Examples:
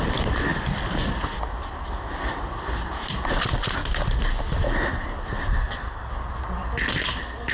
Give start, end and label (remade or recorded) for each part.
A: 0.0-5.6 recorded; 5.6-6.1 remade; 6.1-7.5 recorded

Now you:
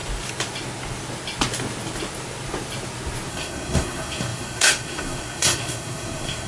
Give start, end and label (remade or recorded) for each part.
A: 0.0-3.3 recorded; 3.3-6.5 remade

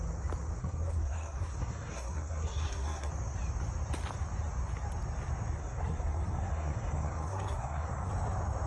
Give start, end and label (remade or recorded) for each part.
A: 0.0-0.6 recorded; 0.6-3.1 remade; 3.1-5.6 recorded; 5.6-8.1 remade; 8.1-8.7 recorded

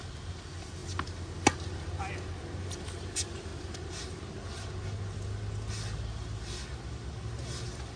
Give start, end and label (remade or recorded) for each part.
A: 0.0-8.0 recorded

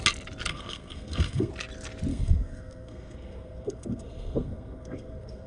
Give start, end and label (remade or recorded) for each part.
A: 0.0-0.5 recorded; 0.5-1.5 remade; 1.5-2.1 recorded; 2.1-5.5 remade

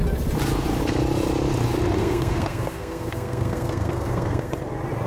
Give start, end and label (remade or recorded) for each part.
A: 0.0-2.0 recorded; 2.0-4.5 remade; 4.5-5.1 recorded